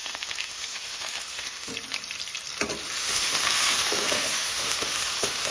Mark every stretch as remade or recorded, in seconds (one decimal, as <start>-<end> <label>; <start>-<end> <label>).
0.0-1.7 remade; 1.7-3.0 recorded; 3.0-5.5 remade